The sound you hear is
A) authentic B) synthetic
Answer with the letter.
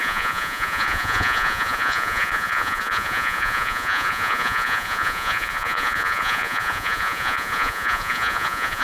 B